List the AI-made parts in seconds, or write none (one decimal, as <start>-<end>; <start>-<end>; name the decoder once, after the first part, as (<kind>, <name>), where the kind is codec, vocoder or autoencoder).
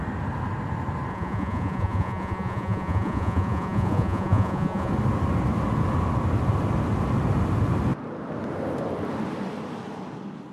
1.1-4.9 (vocoder, Vocos)